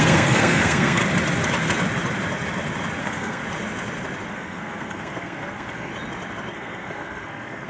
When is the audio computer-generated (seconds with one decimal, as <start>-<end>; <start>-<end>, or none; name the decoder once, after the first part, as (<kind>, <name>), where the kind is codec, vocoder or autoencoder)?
0.0-1.0 (codec, SNAC); 3.0-3.4; 4.3-5.9; 6.5-7.7